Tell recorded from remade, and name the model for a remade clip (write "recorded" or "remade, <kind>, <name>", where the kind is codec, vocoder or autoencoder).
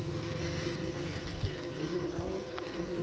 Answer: remade, codec, SNAC